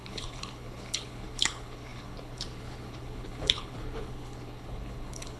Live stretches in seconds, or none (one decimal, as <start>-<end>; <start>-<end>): none